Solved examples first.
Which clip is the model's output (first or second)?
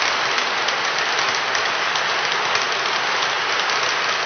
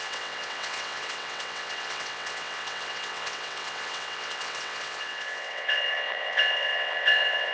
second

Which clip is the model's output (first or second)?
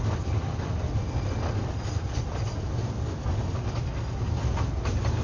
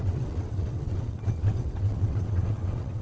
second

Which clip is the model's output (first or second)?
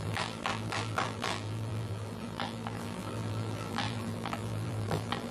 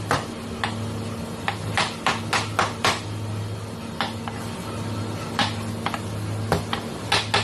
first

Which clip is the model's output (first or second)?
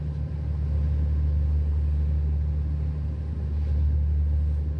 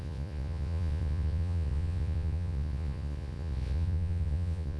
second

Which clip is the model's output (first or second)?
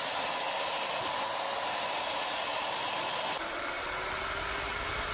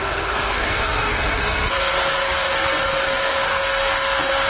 second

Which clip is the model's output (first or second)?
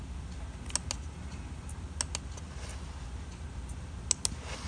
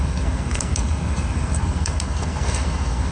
second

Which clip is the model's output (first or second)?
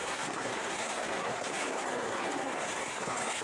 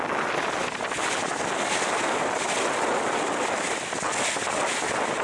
first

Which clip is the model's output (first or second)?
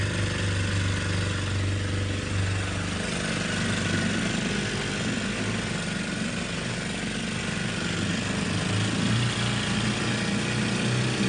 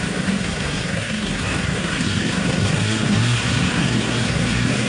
second